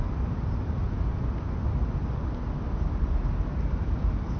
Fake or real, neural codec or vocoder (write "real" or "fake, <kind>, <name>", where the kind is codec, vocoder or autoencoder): real